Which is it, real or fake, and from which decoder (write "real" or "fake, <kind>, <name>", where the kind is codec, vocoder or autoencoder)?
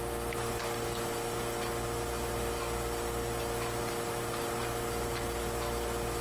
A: real